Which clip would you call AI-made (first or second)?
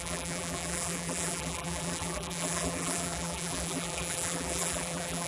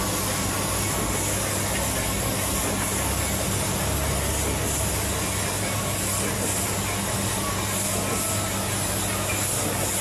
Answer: first